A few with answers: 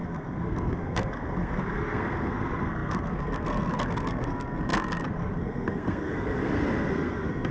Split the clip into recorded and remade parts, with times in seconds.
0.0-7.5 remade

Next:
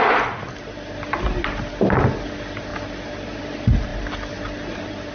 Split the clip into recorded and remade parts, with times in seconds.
0.0-5.1 recorded